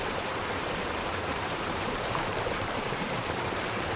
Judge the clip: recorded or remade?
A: remade